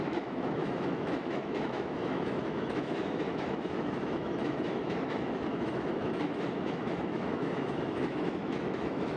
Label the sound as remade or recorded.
remade